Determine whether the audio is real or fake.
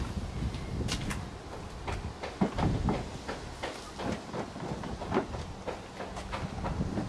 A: real